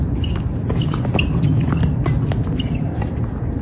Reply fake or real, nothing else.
real